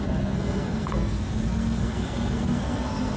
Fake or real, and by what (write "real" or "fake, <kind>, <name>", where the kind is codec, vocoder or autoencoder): fake, codec, SNAC